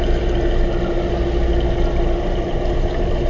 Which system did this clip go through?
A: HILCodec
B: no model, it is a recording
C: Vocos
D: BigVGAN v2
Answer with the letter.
B